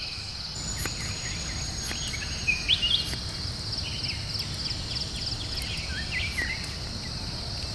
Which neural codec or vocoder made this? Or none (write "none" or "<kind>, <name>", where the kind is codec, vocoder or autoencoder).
none